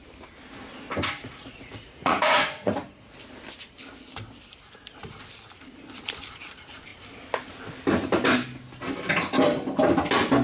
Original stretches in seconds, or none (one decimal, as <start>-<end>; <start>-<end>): 0.0-1.2; 2.7-10.4